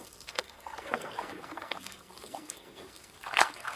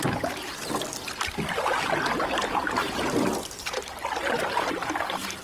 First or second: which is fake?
first